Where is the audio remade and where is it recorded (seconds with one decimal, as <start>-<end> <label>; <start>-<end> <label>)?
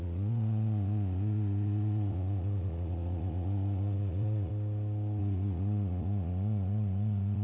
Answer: 0.0-4.5 remade; 4.5-5.2 recorded; 5.2-7.4 remade